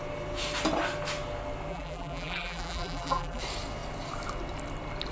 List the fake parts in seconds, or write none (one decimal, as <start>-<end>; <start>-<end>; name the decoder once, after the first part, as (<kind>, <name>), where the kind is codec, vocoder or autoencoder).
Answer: 1.7-3.4 (vocoder, BigVGAN v2)